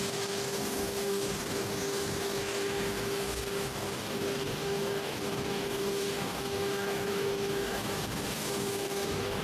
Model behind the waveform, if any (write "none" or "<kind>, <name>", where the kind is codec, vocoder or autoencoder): codec, DAC